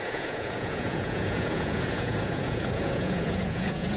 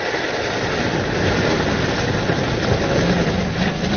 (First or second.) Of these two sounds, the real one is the second